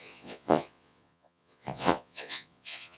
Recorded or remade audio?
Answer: remade